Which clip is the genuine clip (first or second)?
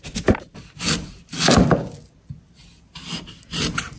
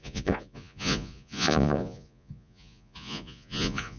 first